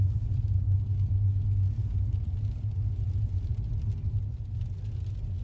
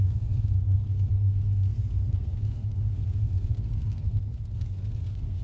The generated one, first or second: second